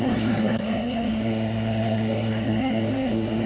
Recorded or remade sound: remade